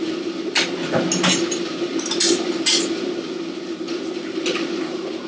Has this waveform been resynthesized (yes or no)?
no